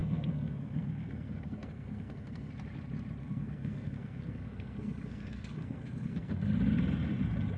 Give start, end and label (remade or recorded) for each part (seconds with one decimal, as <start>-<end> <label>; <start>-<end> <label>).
0.0-2.5 remade; 2.5-3.2 recorded; 3.2-6.4 remade; 6.4-7.6 recorded